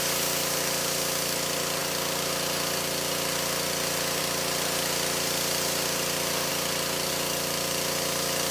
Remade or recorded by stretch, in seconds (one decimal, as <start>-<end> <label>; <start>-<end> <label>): 0.0-8.5 recorded